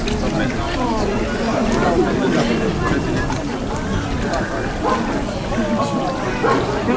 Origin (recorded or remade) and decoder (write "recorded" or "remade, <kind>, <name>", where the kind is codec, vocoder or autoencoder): recorded